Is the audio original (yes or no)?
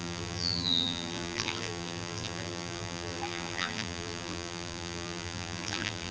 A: no